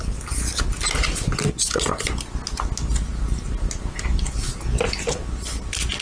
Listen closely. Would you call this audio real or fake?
real